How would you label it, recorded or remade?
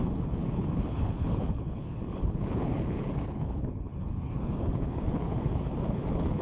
remade